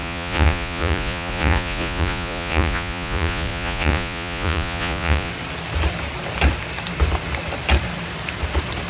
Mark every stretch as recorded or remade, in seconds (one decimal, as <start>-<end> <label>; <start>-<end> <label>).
0.0-5.3 remade; 5.3-8.9 recorded